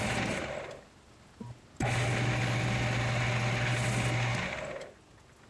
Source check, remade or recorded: recorded